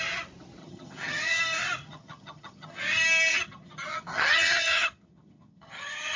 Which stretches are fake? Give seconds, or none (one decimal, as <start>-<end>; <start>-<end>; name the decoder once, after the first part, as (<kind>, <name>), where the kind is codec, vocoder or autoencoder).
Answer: 0.6-1.4 (vocoder, HiFi-GAN); 1.8-2.8; 3.3-6.2